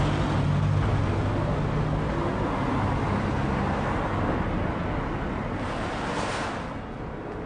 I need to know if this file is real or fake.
real